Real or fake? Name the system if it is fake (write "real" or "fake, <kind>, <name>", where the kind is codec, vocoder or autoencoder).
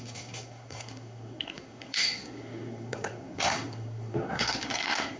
fake, codec, SNAC